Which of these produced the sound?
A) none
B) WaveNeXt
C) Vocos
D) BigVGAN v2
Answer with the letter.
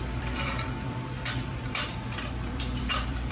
D